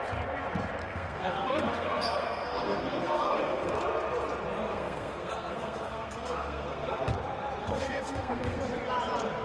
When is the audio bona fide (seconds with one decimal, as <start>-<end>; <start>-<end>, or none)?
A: 0.0-0.8; 3.8-4.7; 7.1-7.6; 8.6-9.4